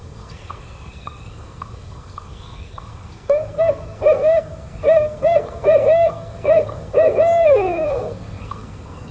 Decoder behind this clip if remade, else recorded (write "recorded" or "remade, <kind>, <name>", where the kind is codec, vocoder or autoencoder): remade, codec, SNAC